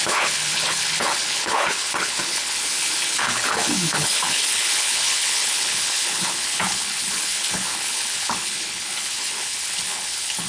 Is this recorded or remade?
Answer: remade